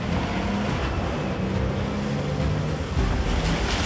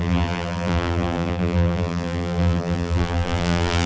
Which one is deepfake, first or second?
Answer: second